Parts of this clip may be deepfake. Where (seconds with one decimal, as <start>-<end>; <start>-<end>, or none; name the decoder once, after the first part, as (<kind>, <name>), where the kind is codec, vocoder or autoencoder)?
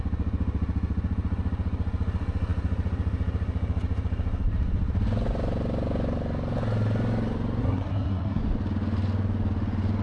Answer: 7.6-8.4 (codec, SNAC)